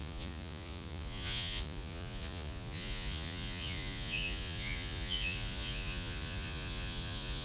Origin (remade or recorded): remade